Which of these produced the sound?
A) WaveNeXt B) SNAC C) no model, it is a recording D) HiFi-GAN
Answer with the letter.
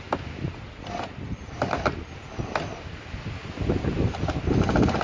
C